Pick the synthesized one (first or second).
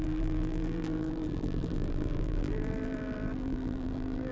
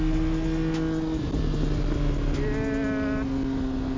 first